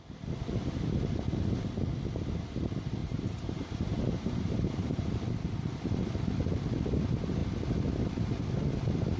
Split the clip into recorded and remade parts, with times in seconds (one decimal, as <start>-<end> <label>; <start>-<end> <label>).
0.0-3.0 recorded; 3.0-5.1 remade; 5.1-9.2 recorded